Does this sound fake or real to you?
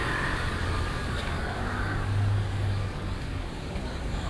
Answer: fake